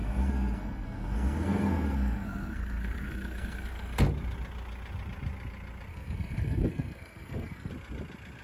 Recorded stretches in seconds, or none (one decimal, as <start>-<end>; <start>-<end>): 4.0-5.9; 7.7-8.4